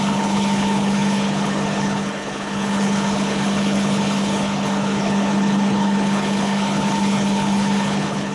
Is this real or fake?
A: fake